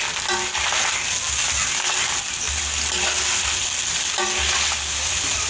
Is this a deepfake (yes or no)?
no